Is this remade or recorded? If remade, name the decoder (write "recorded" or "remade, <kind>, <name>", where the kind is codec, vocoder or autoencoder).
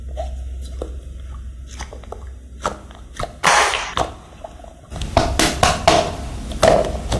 recorded